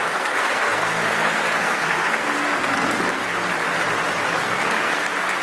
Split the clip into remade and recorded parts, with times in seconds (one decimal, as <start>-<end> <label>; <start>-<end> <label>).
0.0-3.2 remade; 3.2-4.4 recorded; 4.4-5.4 remade